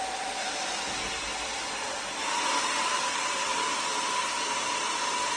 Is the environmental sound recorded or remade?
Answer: recorded